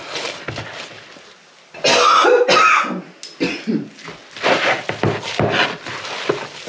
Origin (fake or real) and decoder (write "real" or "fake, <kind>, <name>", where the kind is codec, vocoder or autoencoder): real